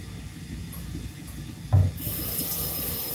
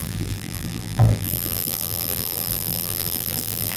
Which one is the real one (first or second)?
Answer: first